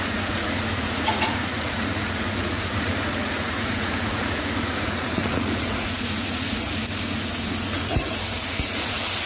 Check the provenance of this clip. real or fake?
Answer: fake